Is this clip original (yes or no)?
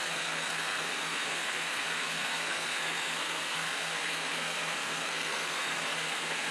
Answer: no